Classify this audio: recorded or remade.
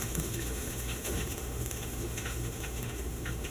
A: remade